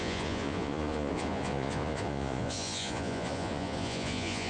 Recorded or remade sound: remade